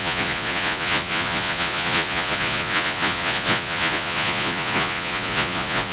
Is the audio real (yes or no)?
no